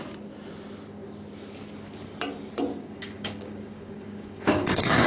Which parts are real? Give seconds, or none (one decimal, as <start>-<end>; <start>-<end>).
0.0-2.7